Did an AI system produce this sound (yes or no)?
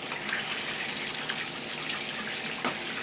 no